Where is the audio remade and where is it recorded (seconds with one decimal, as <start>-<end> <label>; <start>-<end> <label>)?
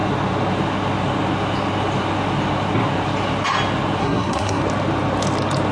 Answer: 0.0-4.0 recorded; 4.0-4.6 remade; 4.6-5.7 recorded